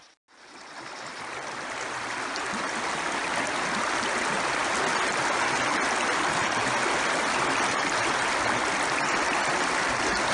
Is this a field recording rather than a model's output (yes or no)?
yes